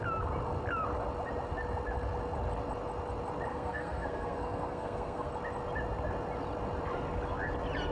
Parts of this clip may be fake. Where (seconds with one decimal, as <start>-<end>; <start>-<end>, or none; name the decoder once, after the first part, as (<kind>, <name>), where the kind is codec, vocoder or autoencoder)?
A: 3.5-5.3 (codec, SNAC)